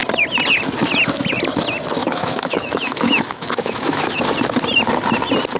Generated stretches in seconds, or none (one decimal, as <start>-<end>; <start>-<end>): 2.0-4.2